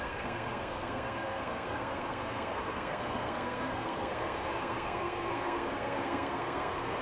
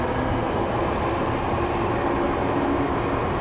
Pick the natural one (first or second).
second